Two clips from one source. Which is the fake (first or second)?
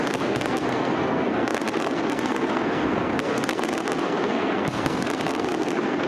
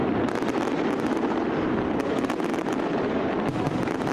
first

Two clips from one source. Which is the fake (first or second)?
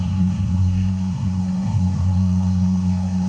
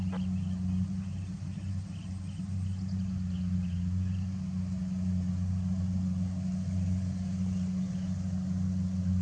first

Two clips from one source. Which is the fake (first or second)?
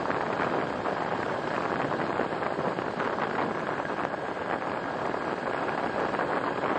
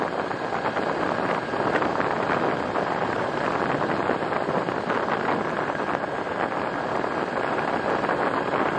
first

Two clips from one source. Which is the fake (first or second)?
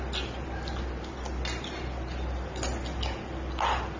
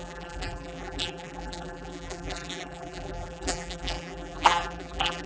second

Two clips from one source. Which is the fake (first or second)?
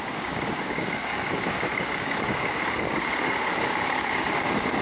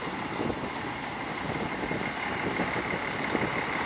first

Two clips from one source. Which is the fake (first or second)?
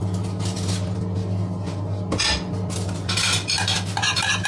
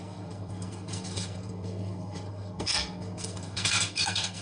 second